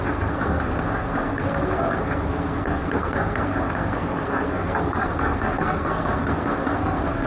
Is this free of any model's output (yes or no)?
no